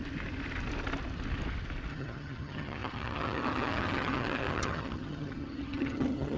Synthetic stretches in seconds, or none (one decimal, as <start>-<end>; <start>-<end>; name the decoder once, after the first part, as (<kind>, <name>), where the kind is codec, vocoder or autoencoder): 1.9-6.4 (vocoder, HiFi-GAN)